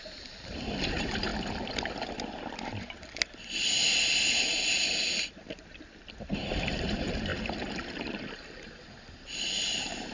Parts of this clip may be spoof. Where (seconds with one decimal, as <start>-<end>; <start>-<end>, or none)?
0.0-1.3; 6.1-7.3; 9.6-10.1